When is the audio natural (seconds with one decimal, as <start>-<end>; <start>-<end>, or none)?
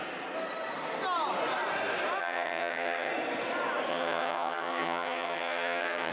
0.0-2.2; 3.1-3.9